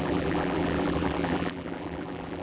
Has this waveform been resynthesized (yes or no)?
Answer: yes